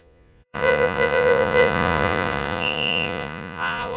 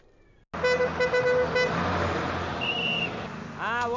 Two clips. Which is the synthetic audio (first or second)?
first